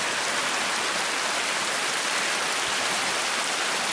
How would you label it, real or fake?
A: real